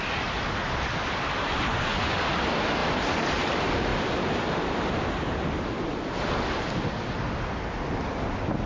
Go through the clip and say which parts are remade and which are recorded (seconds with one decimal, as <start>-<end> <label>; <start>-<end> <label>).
0.0-1.7 recorded; 1.7-2.2 remade; 2.2-8.7 recorded